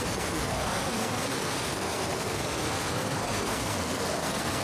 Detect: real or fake fake